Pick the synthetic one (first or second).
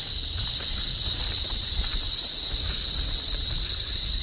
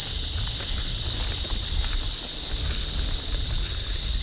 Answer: first